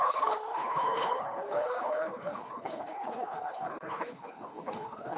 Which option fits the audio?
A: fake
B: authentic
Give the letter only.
A